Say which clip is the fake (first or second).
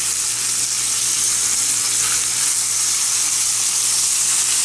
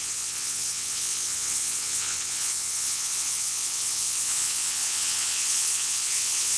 second